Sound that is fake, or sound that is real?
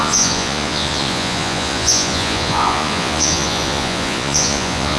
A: fake